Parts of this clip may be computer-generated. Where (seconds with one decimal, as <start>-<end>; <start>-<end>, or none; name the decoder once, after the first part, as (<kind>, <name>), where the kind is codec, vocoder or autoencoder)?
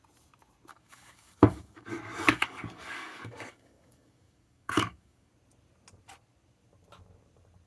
0.7-5.3 (codec, DAC)